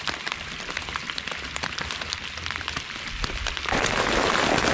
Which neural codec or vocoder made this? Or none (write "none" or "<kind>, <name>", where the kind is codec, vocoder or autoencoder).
none